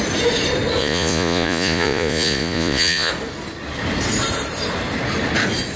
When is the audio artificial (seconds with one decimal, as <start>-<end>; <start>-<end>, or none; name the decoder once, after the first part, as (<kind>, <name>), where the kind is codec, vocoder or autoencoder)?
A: 0.8-3.1 (vocoder, Vocos)